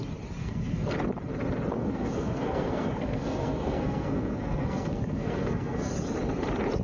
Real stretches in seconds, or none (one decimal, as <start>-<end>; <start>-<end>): 0.0-0.4; 0.9-1.8; 5.9-6.8